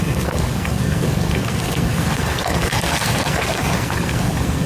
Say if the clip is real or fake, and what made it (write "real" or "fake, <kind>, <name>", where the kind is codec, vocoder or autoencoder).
fake, codec, SNAC